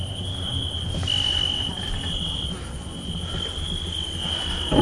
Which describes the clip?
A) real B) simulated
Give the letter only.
A